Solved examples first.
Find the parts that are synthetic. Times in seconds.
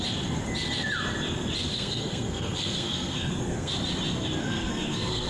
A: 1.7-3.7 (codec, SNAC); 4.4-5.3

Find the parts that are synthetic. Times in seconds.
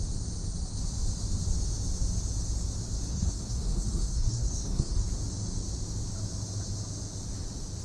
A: 3.1-5.0 (codec, SNAC)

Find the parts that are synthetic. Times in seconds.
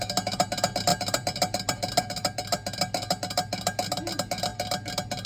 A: none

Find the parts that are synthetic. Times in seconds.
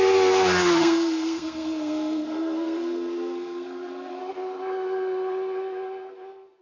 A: 0.8-4.2 (codec, SNAC)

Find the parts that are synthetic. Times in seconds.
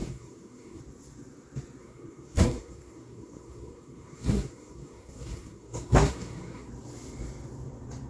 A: 0.0-0.8 (codec, SNAC); 1.8-6.7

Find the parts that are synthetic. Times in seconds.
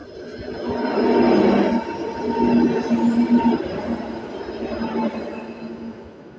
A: none